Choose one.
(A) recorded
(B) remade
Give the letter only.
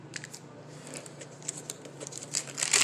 B